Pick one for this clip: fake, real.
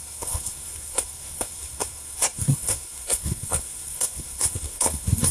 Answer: fake